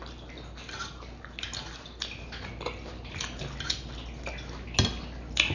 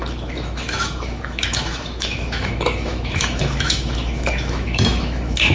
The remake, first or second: second